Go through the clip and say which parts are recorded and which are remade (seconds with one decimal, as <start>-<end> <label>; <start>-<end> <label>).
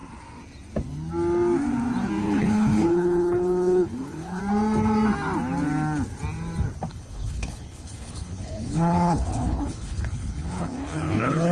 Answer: 0.0-2.2 recorded; 2.2-4.4 remade; 4.4-6.9 recorded; 6.9-11.5 remade